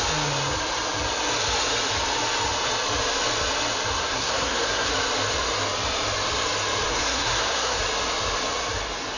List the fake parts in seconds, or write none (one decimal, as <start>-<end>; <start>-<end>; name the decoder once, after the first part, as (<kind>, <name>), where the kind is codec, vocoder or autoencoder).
4.0-4.9 (codec, SNAC); 6.9-7.8